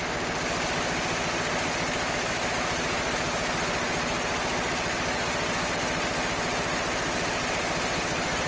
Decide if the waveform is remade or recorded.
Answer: recorded